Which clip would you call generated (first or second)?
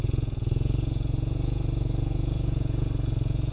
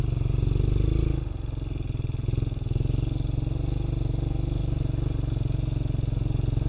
first